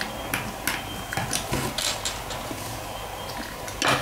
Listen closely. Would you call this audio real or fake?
real